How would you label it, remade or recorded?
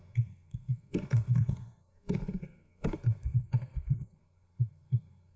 remade